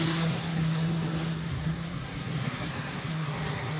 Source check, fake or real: fake